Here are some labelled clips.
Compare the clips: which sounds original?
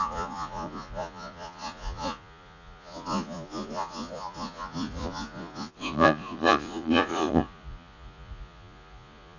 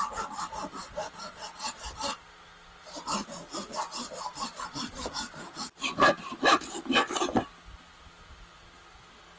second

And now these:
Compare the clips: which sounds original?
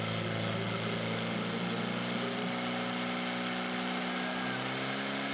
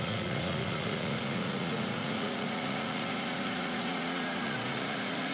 first